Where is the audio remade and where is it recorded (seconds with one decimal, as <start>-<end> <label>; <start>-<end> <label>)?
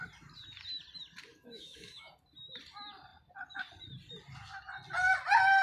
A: 0.0-1.3 recorded; 1.3-2.1 remade; 2.1-5.6 recorded